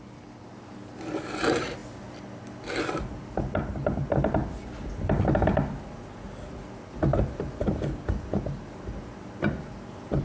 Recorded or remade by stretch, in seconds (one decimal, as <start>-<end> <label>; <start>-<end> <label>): 0.0-10.2 recorded